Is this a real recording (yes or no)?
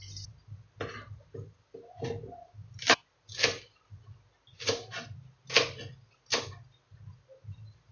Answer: yes